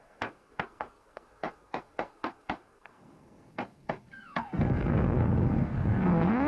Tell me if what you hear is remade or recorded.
remade